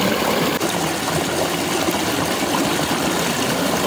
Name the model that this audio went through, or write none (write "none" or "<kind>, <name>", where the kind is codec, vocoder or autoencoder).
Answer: none